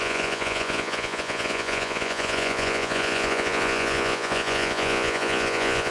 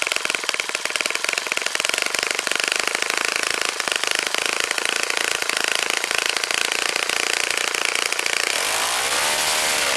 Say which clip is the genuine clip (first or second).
second